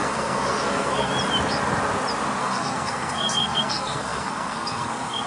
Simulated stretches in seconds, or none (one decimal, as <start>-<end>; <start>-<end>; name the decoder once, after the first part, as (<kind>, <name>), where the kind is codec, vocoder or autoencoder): 0.0-1.1 (codec, SNAC); 2.4-5.3

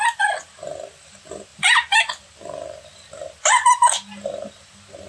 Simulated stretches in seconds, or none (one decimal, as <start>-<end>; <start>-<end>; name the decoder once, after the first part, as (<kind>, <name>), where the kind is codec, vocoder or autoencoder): none

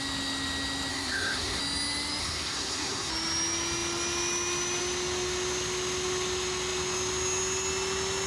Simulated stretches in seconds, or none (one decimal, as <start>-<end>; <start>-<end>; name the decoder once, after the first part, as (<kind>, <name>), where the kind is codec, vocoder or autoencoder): 0.9-1.6 (codec, SNAC); 2.2-3.1

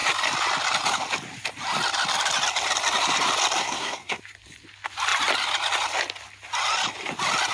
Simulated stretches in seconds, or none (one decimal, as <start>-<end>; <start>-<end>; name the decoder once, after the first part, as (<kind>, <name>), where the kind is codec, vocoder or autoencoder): 3.6-4.2 (codec, SNAC)

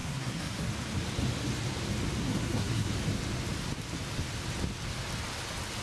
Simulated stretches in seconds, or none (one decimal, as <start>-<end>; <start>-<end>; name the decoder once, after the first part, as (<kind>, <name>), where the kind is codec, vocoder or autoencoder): 0.0-0.7 (codec, SNAC); 2.2-2.9

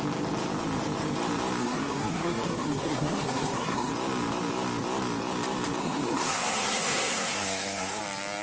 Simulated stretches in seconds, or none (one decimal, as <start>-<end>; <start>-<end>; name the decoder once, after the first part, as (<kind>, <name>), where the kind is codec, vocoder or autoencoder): 1.6-3.9 (codec, SNAC); 5.8-8.0

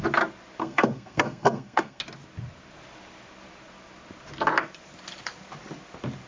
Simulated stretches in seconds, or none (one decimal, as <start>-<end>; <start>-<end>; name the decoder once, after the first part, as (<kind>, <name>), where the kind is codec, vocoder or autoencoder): 0.6-2.0 (codec, SNAC)